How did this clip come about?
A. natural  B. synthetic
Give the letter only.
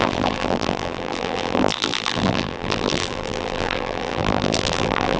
B